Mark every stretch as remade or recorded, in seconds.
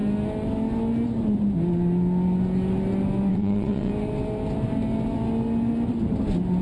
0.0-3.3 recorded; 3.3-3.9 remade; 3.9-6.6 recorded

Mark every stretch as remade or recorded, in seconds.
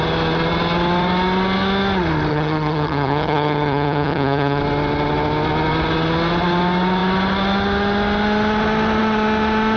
0.0-2.3 recorded; 2.3-4.6 remade; 4.6-9.8 recorded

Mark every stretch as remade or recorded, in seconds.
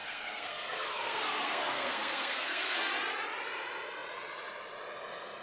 0.0-2.9 remade; 2.9-5.4 recorded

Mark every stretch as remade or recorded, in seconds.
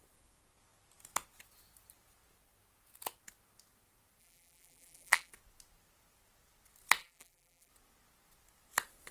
0.0-4.2 recorded; 4.2-5.3 remade; 5.3-7.0 recorded; 7.0-7.7 remade; 7.7-9.1 recorded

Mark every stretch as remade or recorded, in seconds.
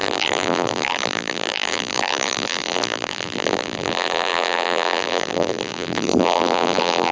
0.0-7.1 remade